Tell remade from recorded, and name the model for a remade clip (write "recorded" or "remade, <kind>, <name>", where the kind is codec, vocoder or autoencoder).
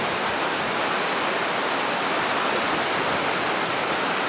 recorded